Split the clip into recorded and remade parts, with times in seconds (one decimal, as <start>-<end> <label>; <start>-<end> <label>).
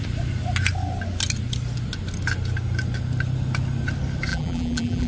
0.0-4.3 recorded; 4.3-5.1 remade